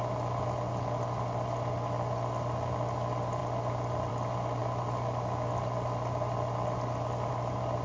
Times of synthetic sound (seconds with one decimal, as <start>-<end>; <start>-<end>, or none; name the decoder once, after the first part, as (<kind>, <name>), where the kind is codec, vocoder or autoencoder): none